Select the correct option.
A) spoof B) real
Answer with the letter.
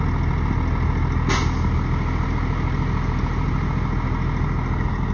B